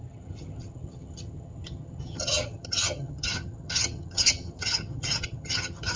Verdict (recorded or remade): remade